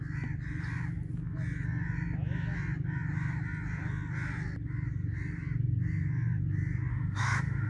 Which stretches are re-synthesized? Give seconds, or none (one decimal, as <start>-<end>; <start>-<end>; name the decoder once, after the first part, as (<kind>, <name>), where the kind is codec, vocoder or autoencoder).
6.9-7.7 (autoencoder, DAC-VAE)

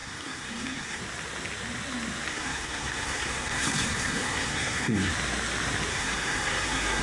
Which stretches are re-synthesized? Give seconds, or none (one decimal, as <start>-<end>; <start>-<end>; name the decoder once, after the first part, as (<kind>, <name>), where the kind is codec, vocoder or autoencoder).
0.0-1.0 (codec, SNAC); 2.3-5.1; 5.9-7.0